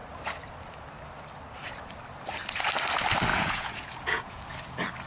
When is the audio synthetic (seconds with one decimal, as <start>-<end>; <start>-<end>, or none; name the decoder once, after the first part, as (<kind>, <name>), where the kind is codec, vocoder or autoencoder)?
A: 3.3-4.4 (vocoder, Vocos)